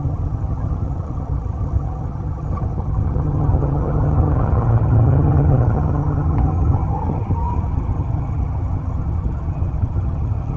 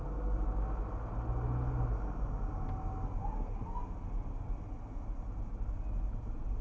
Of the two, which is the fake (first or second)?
first